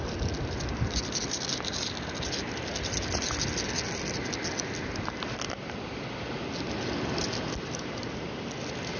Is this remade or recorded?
recorded